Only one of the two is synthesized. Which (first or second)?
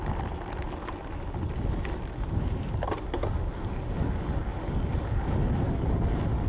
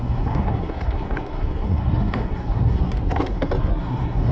second